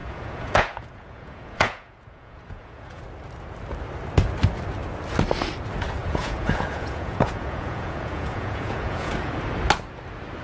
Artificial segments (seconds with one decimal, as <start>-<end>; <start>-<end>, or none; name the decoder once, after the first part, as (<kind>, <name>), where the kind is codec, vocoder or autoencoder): 0.0-3.0 (vocoder, Vocos); 6.0-9.3

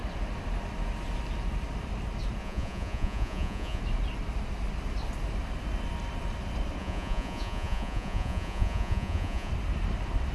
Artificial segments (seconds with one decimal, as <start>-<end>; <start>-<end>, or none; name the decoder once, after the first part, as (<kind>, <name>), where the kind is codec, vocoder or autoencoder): 2.4-3.8 (vocoder, Vocos); 6.8-9.5